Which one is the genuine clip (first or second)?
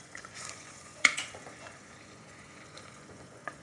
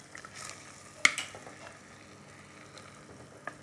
second